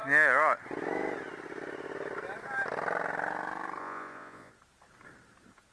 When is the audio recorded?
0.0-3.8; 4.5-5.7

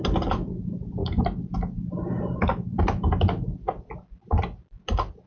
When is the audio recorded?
0.0-5.3